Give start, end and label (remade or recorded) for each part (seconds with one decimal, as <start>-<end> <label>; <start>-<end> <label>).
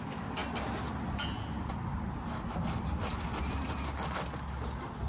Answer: 0.0-5.1 recorded